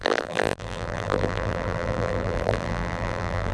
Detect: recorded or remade remade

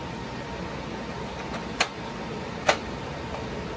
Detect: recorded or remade recorded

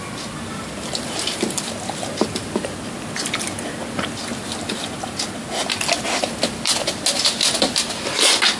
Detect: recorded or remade recorded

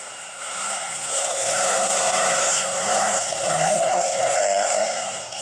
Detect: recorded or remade remade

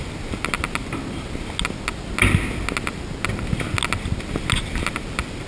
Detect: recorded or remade recorded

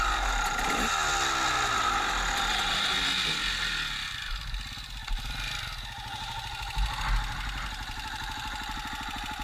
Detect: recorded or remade recorded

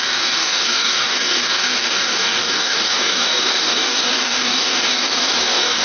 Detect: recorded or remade remade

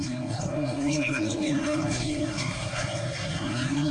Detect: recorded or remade remade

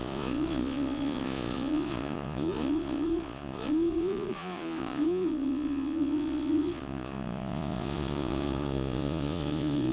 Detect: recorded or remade remade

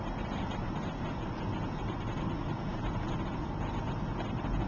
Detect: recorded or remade recorded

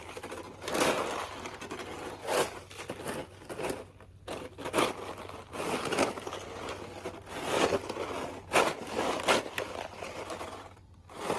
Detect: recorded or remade recorded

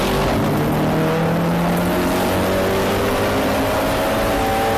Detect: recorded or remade recorded